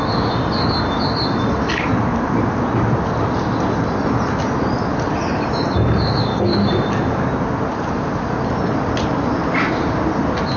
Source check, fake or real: real